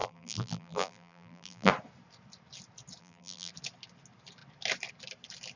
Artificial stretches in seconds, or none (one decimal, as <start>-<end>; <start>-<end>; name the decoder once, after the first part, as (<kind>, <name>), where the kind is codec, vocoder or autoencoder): 0.0-1.7 (vocoder, BigVGAN v2); 3.0-3.5